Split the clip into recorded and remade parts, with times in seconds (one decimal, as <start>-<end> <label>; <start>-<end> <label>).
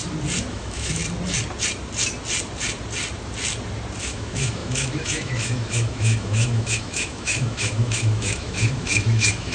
0.0-0.5 recorded; 0.5-1.0 remade; 1.0-4.0 recorded; 4.0-9.5 remade